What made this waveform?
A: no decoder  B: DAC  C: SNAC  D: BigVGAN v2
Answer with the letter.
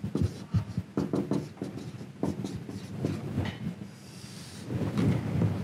A